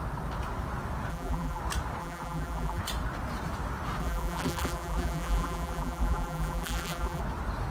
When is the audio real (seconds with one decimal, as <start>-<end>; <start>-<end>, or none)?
0.0-1.1; 1.6-2.0; 2.8-4.0; 7.2-7.7